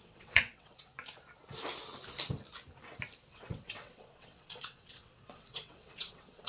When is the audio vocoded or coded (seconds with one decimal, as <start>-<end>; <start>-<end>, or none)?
0.0-0.9; 3.3-6.5